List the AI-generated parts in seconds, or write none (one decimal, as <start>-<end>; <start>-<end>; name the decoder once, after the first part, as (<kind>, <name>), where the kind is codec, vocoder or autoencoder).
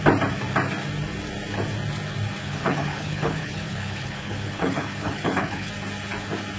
2.4-5.7 (codec, HILCodec)